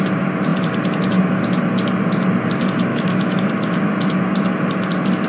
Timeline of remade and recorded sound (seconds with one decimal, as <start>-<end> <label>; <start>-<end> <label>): 0.0-2.9 recorded; 2.9-3.5 remade; 3.5-5.3 recorded